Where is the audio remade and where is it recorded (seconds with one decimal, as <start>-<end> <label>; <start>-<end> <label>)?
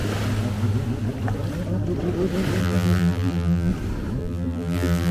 0.0-2.6 recorded; 2.6-3.7 remade; 3.7-4.2 recorded; 4.2-5.1 remade